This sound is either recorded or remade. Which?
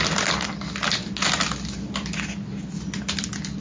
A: recorded